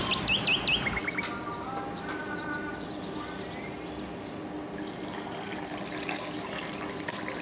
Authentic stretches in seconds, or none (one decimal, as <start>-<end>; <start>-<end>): 0.0-7.4